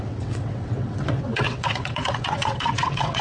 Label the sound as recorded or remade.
remade